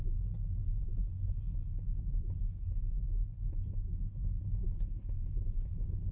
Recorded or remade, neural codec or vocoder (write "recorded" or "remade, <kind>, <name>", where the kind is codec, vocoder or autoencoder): recorded